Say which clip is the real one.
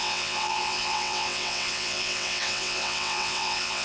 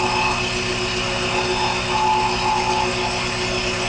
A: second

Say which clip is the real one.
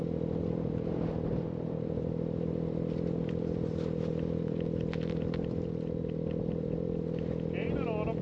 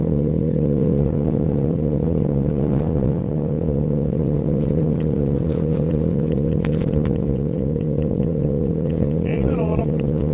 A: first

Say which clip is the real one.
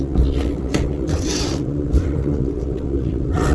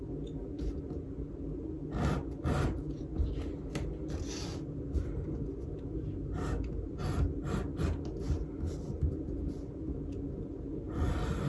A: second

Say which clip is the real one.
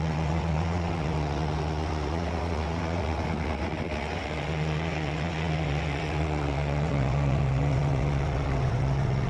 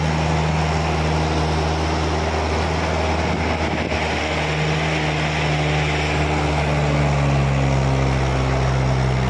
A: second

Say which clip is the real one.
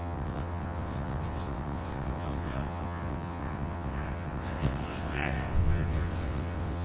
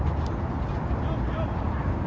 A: second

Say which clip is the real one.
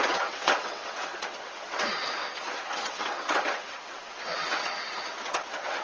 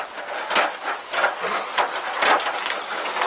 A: second